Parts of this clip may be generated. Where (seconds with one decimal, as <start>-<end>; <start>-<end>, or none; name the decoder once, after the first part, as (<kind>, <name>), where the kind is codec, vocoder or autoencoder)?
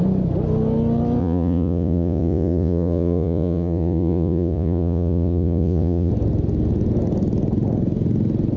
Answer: 1.2-6.1 (vocoder, Vocos)